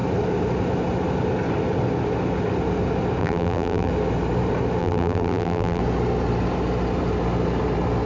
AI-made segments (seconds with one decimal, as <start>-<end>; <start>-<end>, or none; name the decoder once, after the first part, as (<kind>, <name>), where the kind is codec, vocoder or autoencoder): 3.2-3.9 (vocoder, BigVGAN v2); 4.8-5.8

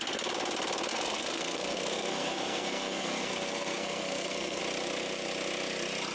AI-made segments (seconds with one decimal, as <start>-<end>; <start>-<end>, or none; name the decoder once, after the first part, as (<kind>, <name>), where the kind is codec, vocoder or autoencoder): 0.9-4.6 (codec, SNAC)

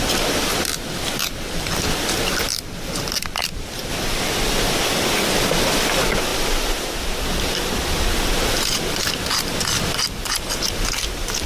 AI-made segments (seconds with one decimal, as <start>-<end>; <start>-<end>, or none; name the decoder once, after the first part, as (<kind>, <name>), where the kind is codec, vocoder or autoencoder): 3.8-5.5 (vocoder, BigVGAN v2)

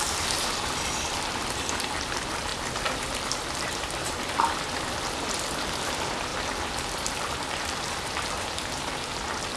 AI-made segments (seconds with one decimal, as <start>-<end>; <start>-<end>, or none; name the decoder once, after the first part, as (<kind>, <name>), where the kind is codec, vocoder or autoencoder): 0.0-9.6 (vocoder, BigVGAN v2)

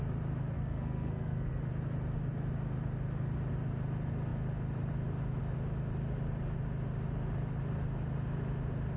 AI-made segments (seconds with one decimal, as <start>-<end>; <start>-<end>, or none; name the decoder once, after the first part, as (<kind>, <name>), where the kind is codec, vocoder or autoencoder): 0.5-1.7 (codec, SNAC)

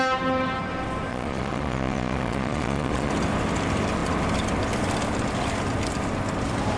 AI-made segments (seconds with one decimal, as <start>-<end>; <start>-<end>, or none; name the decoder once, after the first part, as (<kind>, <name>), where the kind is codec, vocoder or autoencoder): 1.1-3.1 (vocoder, Vocos)

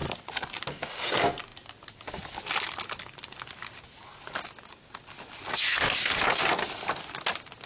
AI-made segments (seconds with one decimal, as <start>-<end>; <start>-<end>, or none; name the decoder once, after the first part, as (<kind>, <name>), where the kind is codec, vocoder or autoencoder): none